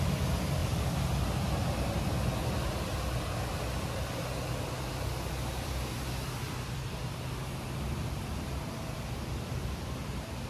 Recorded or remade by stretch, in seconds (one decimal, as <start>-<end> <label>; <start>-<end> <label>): 0.0-0.6 remade; 0.6-5.5 recorded; 5.5-7.0 remade; 7.0-7.8 recorded; 7.8-10.5 remade